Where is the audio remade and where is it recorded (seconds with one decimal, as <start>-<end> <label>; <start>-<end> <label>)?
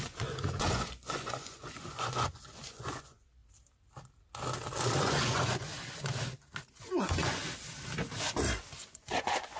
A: 0.0-3.4 remade; 3.4-5.0 recorded; 5.0-5.7 remade; 5.7-6.8 recorded; 6.8-7.4 remade; 7.4-8.8 recorded; 8.8-9.6 remade